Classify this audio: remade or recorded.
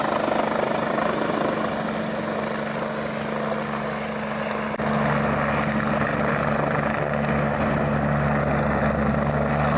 recorded